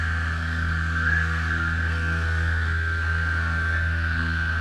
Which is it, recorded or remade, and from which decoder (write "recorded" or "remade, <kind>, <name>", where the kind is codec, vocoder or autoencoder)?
remade, codec, SNAC